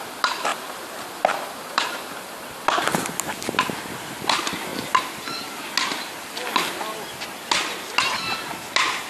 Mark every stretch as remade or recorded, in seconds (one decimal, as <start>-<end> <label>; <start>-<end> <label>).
0.0-0.5 recorded; 0.5-3.2 remade; 3.2-9.1 recorded